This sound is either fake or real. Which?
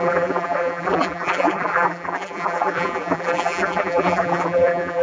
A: fake